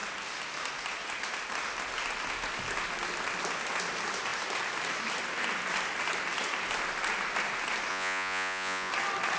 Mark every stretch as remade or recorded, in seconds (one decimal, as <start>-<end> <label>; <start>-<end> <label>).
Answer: 0.0-7.9 recorded; 7.9-8.9 remade; 8.9-9.4 recorded